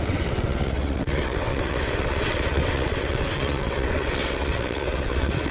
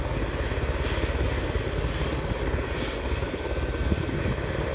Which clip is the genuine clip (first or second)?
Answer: second